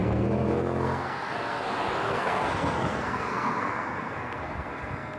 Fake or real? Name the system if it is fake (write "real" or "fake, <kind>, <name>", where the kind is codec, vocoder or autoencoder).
fake, codec, SNAC